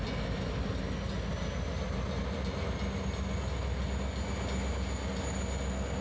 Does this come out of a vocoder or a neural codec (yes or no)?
no